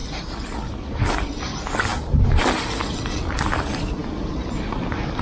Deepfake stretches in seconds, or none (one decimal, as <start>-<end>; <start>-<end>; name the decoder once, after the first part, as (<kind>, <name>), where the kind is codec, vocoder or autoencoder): 0.0-1.9 (vocoder, BigVGAN v2); 2.4-4.0